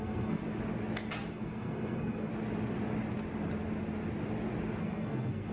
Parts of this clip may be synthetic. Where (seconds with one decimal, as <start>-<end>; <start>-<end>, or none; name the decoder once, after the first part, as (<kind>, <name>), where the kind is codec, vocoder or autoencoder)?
0.0-0.4 (codec, SNAC); 1.3-2.3; 4.8-5.5